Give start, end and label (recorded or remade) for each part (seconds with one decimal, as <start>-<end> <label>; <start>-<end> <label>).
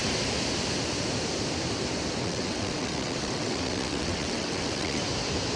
0.0-2.2 recorded; 2.2-5.0 remade; 5.0-5.6 recorded